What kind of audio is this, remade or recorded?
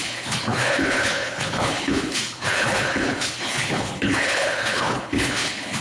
remade